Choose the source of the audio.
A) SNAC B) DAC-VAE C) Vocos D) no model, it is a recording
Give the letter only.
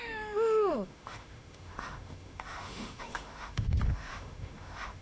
B